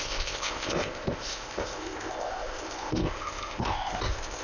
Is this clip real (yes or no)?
no